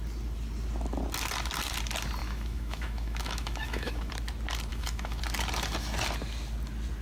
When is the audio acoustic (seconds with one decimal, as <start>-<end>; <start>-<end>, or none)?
0.0-2.2; 4.1-4.7; 5.2-7.0